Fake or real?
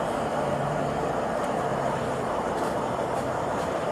fake